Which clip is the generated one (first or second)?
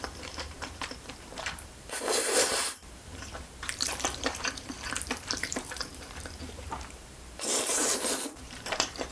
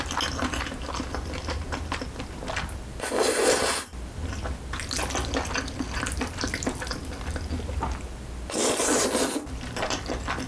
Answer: first